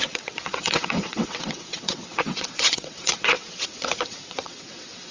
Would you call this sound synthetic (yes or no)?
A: yes